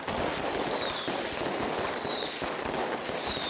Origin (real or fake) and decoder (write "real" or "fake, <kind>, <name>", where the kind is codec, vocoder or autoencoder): fake, vocoder, BigVGAN v2